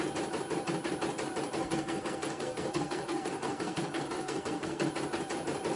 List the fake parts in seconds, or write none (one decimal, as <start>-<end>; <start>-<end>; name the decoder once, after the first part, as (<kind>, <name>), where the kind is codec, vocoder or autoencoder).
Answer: 1.6-4.9 (codec, SNAC)